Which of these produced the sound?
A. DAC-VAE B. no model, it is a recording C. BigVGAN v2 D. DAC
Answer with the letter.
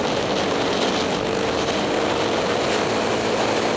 B